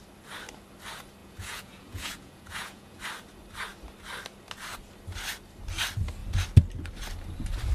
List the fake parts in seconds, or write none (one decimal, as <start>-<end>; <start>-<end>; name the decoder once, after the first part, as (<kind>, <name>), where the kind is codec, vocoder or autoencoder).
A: 1.2-3.0 (vocoder, Vocos)